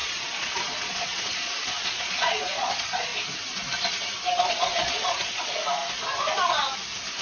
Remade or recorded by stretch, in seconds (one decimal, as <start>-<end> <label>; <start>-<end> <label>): 0.0-3.1 remade; 3.1-4.5 recorded; 4.5-5.8 remade; 5.8-7.2 recorded